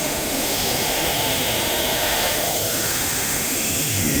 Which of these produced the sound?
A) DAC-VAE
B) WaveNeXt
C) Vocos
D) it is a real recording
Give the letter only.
A